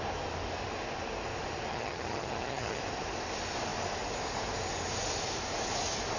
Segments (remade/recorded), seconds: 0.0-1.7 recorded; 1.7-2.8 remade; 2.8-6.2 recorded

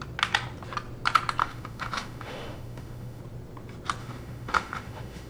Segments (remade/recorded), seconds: 0.0-1.4 recorded; 1.4-3.2 remade; 3.2-4.0 recorded; 4.0-5.3 remade

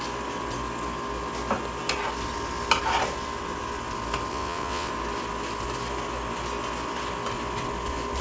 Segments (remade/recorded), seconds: 0.0-4.3 recorded; 4.3-4.9 remade; 4.9-8.2 recorded

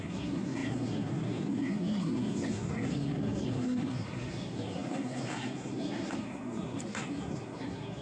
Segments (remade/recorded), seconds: 0.0-8.0 remade

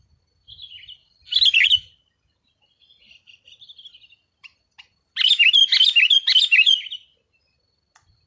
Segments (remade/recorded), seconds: 0.0-8.3 recorded

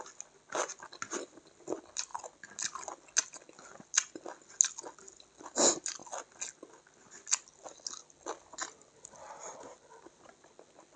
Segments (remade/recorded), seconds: 0.0-11.0 recorded

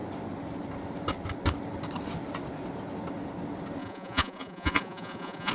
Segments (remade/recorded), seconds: 0.0-3.8 recorded; 3.8-5.5 remade

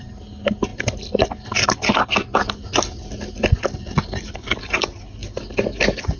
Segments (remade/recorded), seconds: 0.0-6.2 recorded